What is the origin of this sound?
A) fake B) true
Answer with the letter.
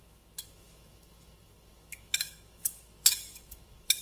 A